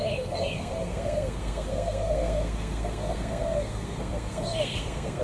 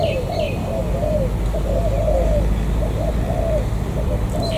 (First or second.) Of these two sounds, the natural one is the second